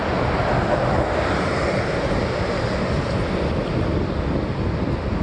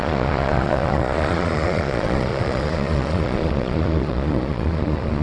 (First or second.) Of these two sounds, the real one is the first